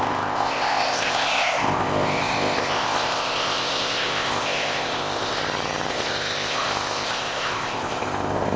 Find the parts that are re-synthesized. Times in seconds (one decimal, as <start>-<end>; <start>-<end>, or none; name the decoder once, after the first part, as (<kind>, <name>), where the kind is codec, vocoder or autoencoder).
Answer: 0.0-5.4 (codec, ZipCodec); 5.9-8.6

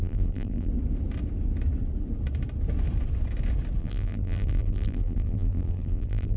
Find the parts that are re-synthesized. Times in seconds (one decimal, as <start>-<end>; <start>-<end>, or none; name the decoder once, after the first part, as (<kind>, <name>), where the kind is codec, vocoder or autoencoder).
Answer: 0.0-0.7 (vocoder, BigVGAN v2); 3.8-6.4

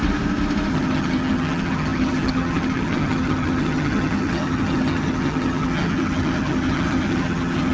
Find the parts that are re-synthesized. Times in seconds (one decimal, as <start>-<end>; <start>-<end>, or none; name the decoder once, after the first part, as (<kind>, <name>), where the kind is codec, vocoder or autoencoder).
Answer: 0.7-7.7 (vocoder, HiFi-GAN)

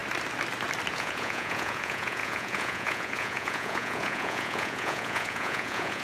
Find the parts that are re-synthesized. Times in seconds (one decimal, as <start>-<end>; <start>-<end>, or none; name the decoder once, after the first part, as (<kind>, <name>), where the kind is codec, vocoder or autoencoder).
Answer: 0.9-6.0 (vocoder, Vocos)

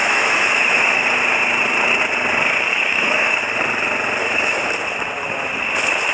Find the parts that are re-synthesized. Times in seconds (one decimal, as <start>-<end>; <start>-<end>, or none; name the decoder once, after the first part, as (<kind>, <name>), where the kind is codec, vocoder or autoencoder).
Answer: 0.0-1.0 (autoencoder, DAC-VAE); 2.7-3.4; 4.2-4.7

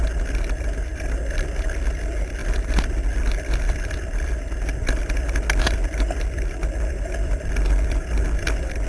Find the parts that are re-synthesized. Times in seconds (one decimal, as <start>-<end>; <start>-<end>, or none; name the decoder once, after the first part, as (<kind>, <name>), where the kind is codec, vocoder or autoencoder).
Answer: none